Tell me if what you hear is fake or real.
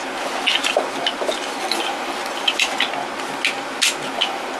real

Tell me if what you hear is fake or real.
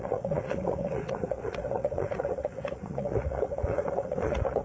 fake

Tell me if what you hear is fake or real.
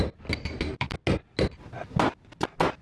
real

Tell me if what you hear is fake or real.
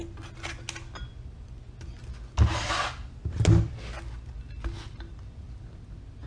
real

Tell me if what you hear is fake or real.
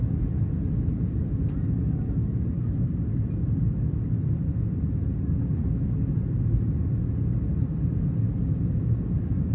real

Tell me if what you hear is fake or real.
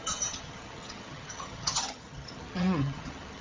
fake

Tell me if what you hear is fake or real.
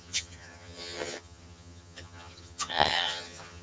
fake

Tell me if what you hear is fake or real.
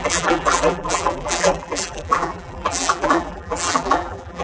fake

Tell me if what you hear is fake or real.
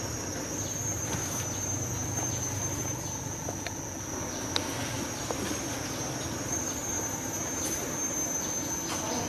real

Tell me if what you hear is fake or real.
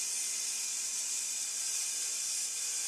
real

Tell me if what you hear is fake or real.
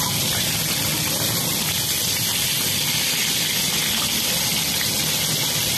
real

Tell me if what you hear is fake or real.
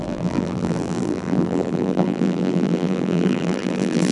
fake